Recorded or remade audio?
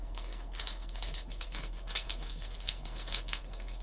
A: remade